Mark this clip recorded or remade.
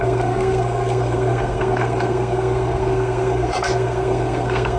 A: remade